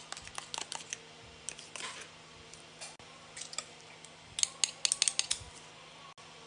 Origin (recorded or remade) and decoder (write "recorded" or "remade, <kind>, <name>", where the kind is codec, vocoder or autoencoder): recorded